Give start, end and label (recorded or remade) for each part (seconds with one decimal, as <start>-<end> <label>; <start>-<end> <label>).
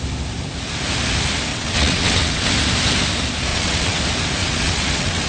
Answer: 0.0-1.5 recorded; 1.5-2.5 remade; 2.5-3.5 recorded; 3.5-4.0 remade; 4.0-4.4 recorded; 4.4-5.3 remade